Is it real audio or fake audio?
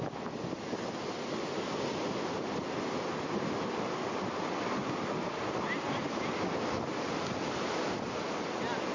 real